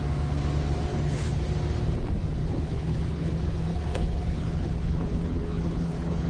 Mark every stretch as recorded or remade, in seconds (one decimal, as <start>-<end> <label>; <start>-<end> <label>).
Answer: 0.0-0.9 recorded; 0.9-1.4 remade; 1.4-2.4 recorded; 2.4-3.3 remade; 3.3-3.7 recorded; 3.7-6.3 remade